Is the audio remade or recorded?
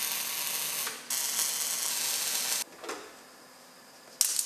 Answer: recorded